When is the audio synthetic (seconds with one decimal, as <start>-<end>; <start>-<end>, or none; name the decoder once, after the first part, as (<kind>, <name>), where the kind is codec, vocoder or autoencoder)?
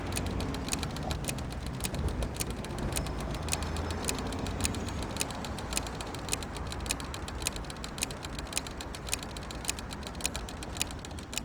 none